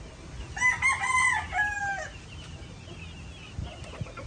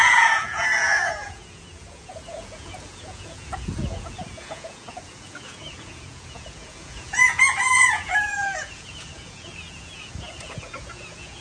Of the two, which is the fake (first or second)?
second